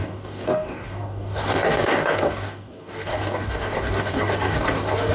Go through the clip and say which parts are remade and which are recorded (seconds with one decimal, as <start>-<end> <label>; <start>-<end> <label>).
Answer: 0.0-5.1 remade